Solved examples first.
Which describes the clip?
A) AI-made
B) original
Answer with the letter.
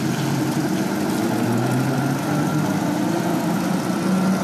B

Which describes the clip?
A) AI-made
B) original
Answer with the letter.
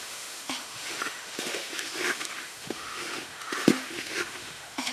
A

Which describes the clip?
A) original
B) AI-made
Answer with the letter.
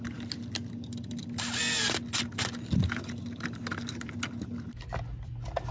A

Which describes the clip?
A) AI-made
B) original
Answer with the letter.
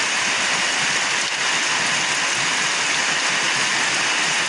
B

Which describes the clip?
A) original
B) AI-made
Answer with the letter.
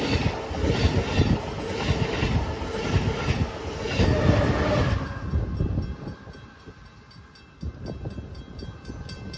A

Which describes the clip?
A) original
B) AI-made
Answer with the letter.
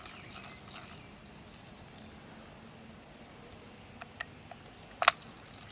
A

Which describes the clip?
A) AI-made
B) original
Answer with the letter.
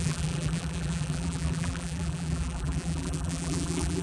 A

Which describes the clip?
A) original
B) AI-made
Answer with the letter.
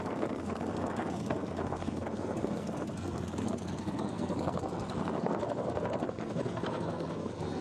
B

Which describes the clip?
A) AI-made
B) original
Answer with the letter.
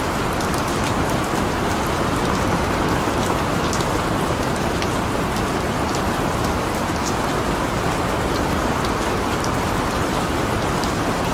B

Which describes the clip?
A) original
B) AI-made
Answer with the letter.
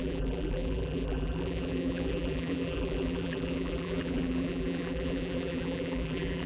B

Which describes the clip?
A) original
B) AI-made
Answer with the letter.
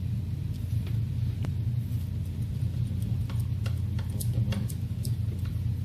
A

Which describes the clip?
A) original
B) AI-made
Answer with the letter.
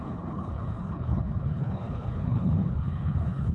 B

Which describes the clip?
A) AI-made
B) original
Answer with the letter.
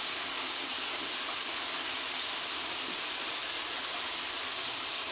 B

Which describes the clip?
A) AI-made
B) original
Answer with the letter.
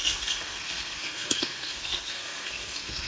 A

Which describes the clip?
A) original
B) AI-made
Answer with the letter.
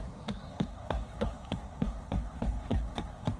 B